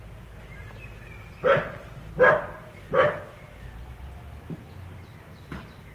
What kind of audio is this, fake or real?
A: real